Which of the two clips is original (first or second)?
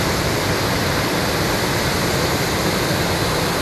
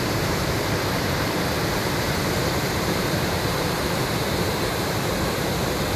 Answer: first